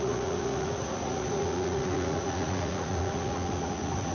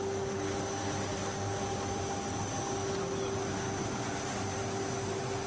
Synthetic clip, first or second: first